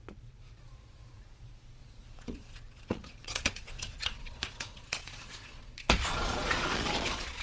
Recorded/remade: remade